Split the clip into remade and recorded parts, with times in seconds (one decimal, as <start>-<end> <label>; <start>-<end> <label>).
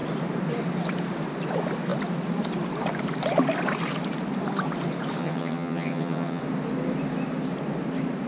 0.0-5.2 recorded; 5.2-6.4 remade; 6.4-8.3 recorded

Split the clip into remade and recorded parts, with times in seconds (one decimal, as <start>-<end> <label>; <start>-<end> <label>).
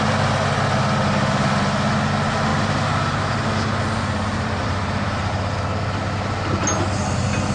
0.0-2.5 recorded; 2.5-5.3 remade; 5.3-7.5 recorded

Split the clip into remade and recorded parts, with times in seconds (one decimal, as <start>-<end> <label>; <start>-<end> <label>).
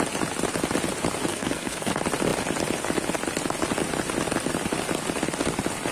0.0-1.3 recorded; 1.3-1.9 remade; 1.9-5.9 recorded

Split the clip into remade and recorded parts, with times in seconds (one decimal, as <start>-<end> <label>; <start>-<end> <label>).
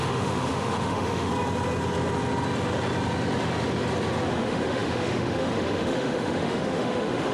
0.0-1.3 remade; 1.3-4.3 recorded; 4.3-7.3 remade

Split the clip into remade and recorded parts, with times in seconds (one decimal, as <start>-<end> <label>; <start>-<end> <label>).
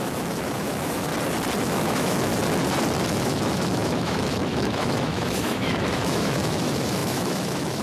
0.0-1.1 remade; 1.1-1.6 recorded; 1.6-2.3 remade; 2.3-3.1 recorded; 3.1-7.8 remade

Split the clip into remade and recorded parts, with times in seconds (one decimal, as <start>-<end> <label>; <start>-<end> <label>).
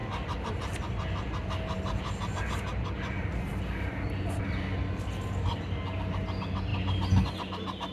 0.0-7.9 recorded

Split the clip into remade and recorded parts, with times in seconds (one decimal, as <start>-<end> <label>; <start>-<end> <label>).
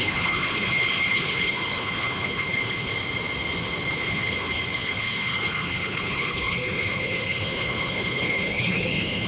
0.0-2.9 remade; 2.9-3.9 recorded; 3.9-9.3 remade